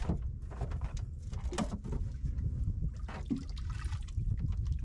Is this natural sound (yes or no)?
yes